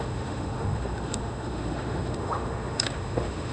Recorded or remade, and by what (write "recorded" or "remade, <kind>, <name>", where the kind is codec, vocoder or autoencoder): remade, autoencoder, DAC-VAE